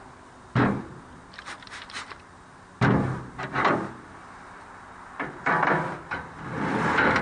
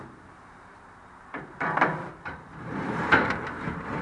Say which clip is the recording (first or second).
first